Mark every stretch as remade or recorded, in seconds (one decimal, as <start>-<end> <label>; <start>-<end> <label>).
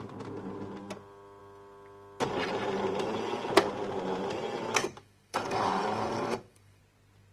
0.0-4.8 recorded; 4.8-6.8 remade; 6.8-7.3 recorded